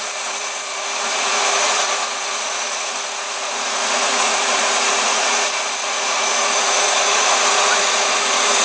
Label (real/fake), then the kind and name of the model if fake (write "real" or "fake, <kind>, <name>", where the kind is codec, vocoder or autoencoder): fake, vocoder, Vocos